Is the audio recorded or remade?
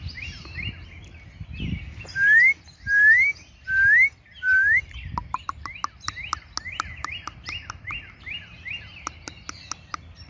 recorded